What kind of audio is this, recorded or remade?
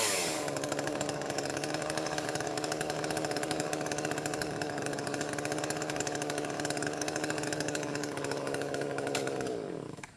remade